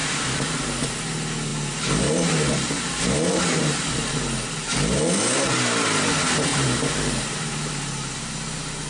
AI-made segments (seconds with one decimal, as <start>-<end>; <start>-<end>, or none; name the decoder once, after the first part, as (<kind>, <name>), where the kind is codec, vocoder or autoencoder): 0.0-0.8 (vocoder, BigVGAN v2); 6.5-7.7